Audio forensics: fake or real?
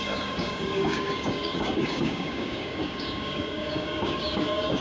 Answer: fake